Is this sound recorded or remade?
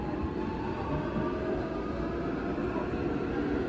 recorded